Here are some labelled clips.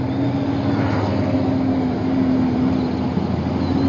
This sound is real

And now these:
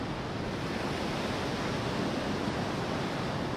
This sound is real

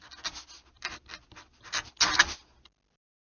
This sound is real